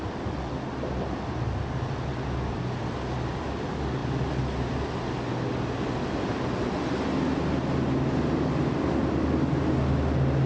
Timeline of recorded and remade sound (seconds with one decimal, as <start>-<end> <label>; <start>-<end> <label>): 0.0-4.0 remade; 4.0-7.6 recorded; 7.6-9.0 remade; 9.0-9.6 recorded; 9.6-10.5 remade